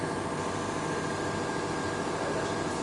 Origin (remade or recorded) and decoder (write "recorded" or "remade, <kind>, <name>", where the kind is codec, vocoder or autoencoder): recorded